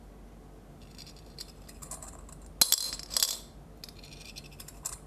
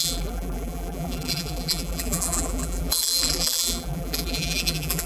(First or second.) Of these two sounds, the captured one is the first